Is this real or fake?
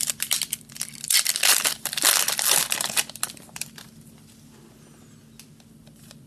real